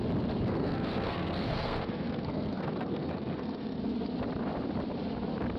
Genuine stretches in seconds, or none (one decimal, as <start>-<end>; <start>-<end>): 0.0-0.5; 3.8-5.6